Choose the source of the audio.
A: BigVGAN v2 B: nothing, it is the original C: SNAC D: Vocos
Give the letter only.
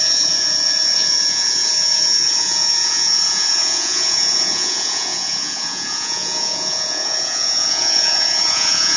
D